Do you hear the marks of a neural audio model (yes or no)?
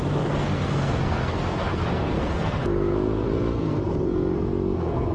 yes